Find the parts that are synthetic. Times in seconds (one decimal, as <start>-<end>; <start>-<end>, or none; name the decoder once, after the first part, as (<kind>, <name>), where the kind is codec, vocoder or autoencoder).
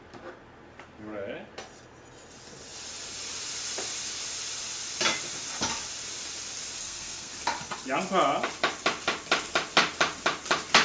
6.8-7.3 (codec, SNAC)